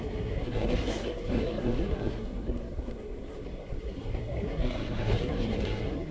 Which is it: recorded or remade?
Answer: remade